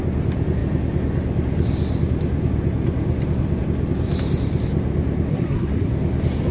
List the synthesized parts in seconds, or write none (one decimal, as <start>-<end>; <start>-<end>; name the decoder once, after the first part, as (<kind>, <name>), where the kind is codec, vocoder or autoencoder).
5.3-5.9 (codec, SNAC)